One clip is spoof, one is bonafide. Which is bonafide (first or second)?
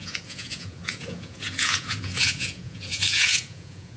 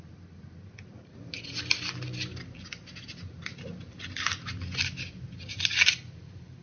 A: second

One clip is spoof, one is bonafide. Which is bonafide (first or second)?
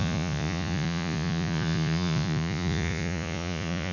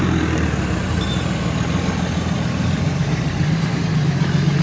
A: second